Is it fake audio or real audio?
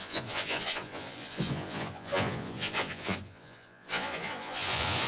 fake